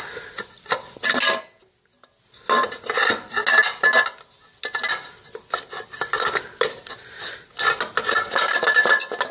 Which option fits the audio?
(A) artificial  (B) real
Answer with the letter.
B